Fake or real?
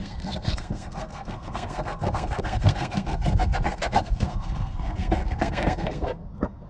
fake